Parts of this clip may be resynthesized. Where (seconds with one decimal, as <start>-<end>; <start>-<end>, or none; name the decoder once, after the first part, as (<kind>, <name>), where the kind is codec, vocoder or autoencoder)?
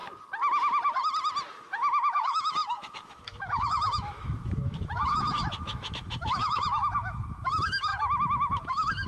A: 1.5-9.1 (autoencoder, DAC-VAE)